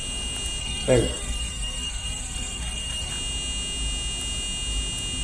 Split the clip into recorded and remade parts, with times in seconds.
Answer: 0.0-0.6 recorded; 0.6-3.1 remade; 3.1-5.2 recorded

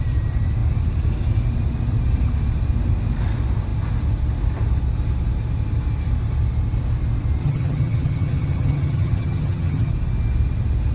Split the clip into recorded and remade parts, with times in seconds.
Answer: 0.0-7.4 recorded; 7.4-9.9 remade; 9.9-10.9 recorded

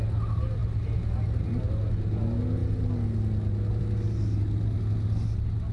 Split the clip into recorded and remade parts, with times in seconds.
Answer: 0.0-5.7 recorded

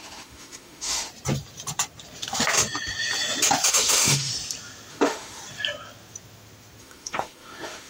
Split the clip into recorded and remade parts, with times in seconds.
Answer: 0.0-1.1 remade; 1.1-3.7 recorded; 3.7-4.3 remade; 4.3-4.9 recorded; 4.9-5.4 remade; 5.4-6.8 recorded; 6.8-7.9 remade